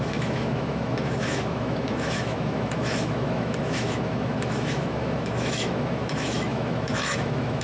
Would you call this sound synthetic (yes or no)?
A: yes